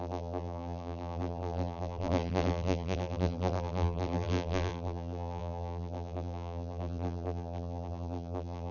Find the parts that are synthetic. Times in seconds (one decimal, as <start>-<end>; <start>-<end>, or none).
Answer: 0.0-8.7